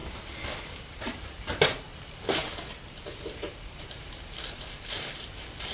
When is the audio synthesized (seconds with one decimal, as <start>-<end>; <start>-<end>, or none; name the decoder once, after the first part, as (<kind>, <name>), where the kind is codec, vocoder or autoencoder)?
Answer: 0.6-1.9 (vocoder, BigVGAN v2); 3.1-5.7